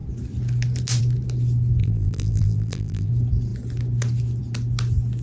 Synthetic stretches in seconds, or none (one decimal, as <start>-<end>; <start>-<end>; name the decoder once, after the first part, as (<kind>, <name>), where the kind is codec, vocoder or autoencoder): 1.8-3.1 (vocoder, BigVGAN v2)